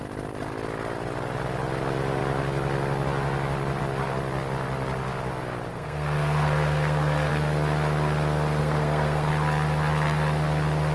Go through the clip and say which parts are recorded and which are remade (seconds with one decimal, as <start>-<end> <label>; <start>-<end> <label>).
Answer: 0.0-5.7 recorded; 5.7-7.3 remade; 7.3-8.6 recorded; 8.6-9.3 remade; 9.3-10.9 recorded